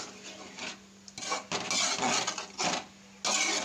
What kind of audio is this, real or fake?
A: real